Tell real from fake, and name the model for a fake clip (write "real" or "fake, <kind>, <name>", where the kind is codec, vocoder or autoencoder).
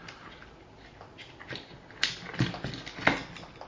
real